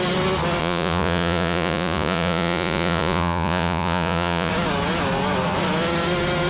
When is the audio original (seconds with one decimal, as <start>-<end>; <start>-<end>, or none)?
0.0-0.6; 4.5-6.5